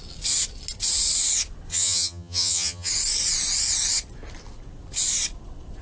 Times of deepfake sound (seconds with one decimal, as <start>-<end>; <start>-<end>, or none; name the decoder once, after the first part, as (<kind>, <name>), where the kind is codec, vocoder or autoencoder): 1.7-2.9 (vocoder, HiFi-GAN)